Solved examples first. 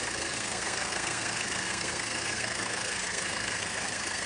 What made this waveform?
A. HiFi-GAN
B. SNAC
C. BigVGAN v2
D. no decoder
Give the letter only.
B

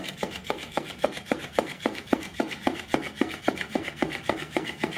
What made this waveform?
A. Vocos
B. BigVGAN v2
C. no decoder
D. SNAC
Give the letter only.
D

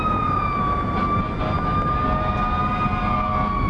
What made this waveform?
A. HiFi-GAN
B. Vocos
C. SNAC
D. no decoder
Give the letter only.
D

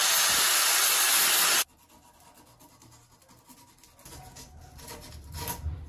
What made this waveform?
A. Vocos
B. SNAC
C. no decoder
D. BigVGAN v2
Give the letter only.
C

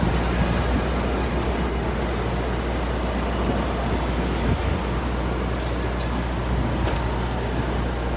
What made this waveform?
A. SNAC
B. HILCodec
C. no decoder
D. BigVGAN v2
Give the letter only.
C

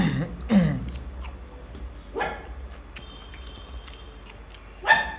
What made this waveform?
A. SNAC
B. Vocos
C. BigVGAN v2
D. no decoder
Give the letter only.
D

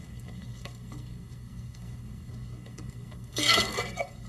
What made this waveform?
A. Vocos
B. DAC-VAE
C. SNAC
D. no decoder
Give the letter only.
C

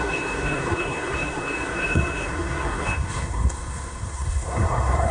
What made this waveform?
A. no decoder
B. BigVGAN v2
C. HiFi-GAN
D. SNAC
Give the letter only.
D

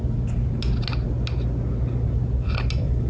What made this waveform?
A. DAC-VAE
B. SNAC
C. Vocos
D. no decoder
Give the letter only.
D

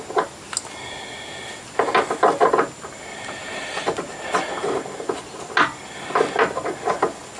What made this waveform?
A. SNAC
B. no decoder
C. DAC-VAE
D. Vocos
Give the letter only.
B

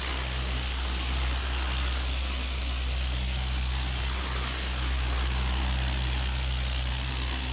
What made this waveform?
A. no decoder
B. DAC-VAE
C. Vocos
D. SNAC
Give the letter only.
A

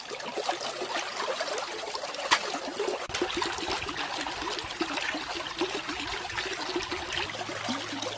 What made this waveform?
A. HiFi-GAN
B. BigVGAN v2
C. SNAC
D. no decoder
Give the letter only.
D